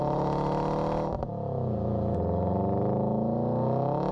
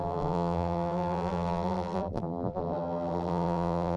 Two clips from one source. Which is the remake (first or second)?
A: second